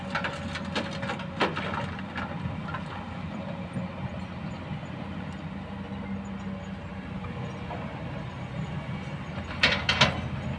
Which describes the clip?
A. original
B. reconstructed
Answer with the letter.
A